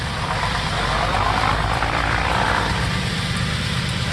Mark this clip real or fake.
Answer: fake